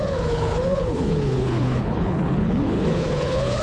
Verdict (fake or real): fake